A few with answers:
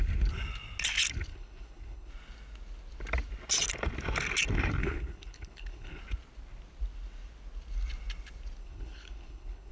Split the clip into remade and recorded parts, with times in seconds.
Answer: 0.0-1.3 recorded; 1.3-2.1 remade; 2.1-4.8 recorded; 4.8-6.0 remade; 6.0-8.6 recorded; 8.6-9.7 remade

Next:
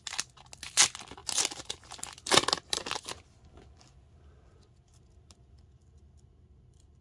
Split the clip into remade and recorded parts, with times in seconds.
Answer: 0.0-7.0 recorded